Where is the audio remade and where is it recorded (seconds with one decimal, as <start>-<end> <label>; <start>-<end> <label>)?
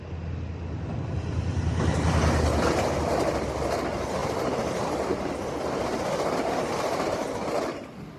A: 0.0-1.5 recorded; 1.5-2.2 remade; 2.2-4.2 recorded; 4.2-4.9 remade; 4.9-8.2 recorded